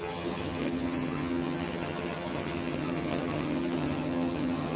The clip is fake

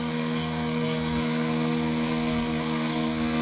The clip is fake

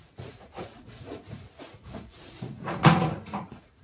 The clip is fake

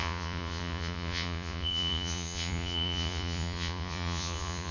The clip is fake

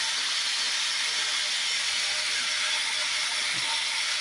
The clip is real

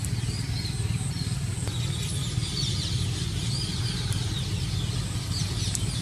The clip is real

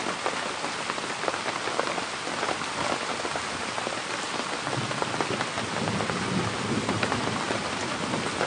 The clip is real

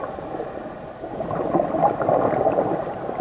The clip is real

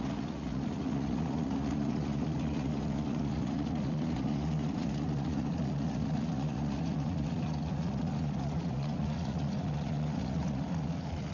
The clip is fake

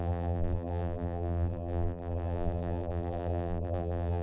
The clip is fake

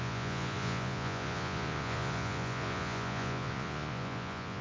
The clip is fake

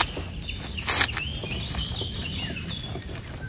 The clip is real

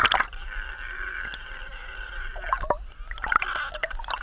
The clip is real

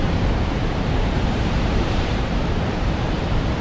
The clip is fake